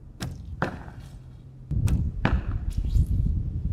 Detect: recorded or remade remade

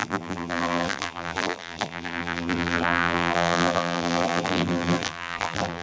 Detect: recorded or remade remade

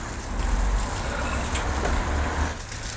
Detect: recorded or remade recorded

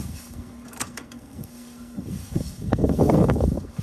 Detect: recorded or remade remade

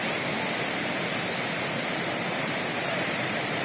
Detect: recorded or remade remade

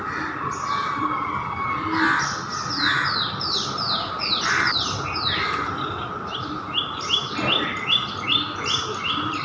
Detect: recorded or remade recorded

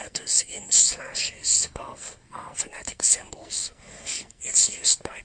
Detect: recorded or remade remade